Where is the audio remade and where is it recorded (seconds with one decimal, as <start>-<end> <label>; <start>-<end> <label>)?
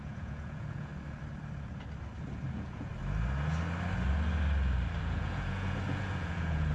0.0-0.9 remade; 0.9-2.5 recorded; 2.5-2.9 remade; 2.9-5.0 recorded; 5.0-6.7 remade